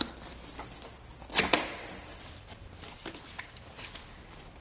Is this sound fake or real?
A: real